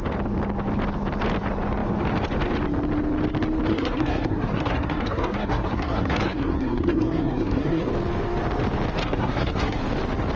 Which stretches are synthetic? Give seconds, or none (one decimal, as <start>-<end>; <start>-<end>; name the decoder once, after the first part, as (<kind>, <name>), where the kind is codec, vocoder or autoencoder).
3.7-7.9 (codec, SNAC); 9.0-9.8